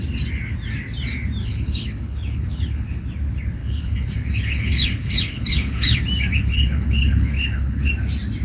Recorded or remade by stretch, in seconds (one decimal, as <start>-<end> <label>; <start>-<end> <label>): 0.0-1.4 recorded; 1.4-3.1 remade; 3.1-3.6 recorded; 3.6-6.0 remade; 6.0-6.5 recorded; 6.5-7.9 remade; 7.9-8.4 recorded